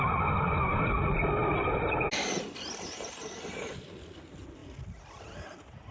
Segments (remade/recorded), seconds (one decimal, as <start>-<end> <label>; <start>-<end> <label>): 0.0-5.9 recorded